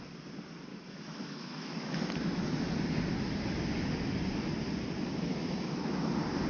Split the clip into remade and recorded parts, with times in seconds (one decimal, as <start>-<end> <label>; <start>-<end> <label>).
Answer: 0.0-0.7 recorded; 0.7-2.7 remade; 2.7-5.3 recorded; 5.3-6.1 remade; 6.1-6.5 recorded